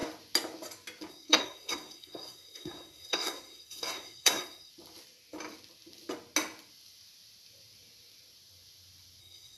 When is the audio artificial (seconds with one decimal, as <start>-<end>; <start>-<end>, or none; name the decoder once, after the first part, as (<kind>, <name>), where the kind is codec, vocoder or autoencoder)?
1.1-4.7 (codec, SNAC); 9.2-9.6